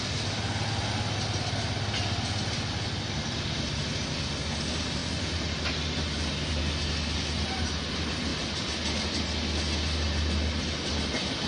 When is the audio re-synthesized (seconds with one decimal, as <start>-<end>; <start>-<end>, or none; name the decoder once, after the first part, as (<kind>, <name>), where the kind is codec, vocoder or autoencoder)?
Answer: none